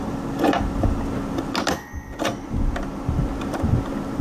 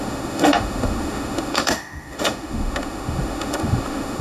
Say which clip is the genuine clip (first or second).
first